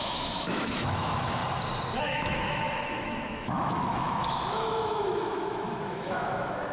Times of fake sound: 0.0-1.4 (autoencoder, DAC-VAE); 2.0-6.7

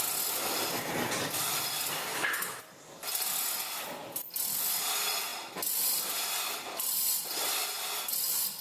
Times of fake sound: 2.1-2.6 (autoencoder, DAC-VAE)

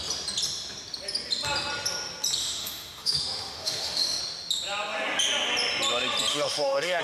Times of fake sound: 2.4-4.2 (autoencoder, DAC-VAE); 6.3-7.0

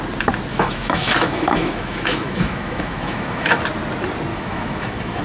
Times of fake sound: 0.5-3.6 (autoencoder, DAC-VAE); 4.3-5.2

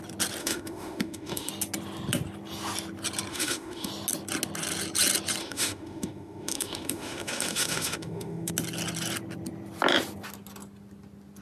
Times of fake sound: 0.4-1.5 (autoencoder, DAC-VAE); 3.3-3.9; 5.4-8.5

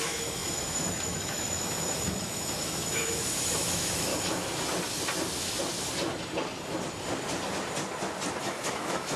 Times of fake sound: 0.0-4.1 (autoencoder, DAC-VAE); 8.4-9.2